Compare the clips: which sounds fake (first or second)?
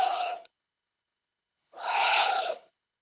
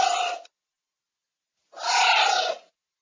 first